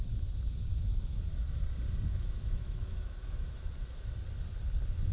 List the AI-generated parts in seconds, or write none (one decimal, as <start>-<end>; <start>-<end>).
0.7-1.6; 2.1-4.1

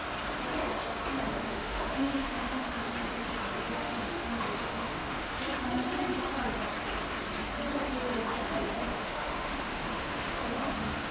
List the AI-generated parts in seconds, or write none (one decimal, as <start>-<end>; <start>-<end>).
1.4-2.9; 3.6-5.4; 8.9-11.1

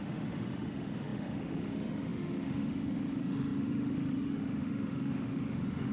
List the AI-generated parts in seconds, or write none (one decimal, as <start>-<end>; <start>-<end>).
0.0-5.9

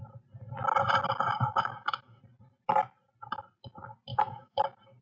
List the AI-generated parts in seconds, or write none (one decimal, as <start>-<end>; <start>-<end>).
1.5-2.2; 4.1-4.6

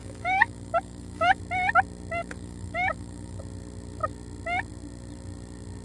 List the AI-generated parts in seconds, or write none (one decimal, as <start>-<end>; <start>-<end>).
0.0-1.4; 2.2-3.4

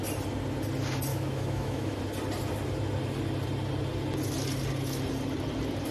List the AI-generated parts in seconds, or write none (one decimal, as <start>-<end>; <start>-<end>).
1.1-2.0

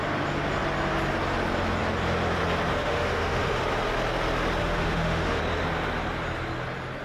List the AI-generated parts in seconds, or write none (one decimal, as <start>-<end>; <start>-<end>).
2.7-3.6; 4.6-5.4

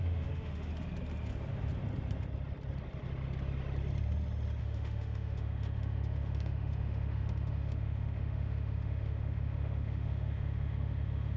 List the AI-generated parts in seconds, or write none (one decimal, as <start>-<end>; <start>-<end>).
0.0-0.7; 4.6-11.4